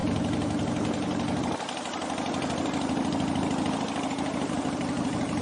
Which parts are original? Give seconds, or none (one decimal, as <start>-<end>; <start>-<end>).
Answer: 0.0-1.4

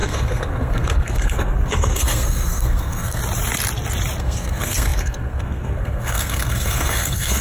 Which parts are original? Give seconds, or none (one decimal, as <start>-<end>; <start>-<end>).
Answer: 3.2-4.2

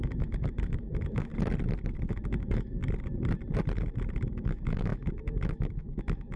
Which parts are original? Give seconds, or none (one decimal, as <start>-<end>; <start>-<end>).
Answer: 1.3-2.1; 2.8-4.2